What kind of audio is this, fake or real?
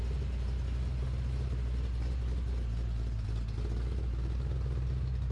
real